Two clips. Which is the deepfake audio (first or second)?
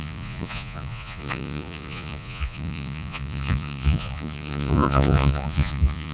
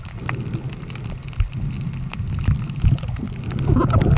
first